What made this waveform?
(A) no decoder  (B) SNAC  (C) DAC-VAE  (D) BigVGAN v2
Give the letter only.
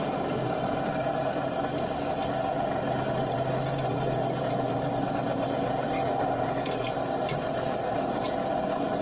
D